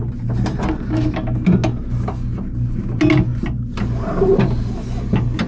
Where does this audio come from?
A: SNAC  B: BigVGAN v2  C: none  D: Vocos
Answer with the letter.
C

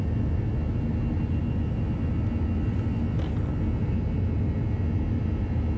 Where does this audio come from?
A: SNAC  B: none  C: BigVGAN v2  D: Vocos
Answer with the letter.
B